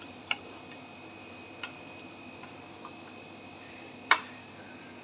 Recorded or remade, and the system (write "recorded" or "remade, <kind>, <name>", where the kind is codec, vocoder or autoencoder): recorded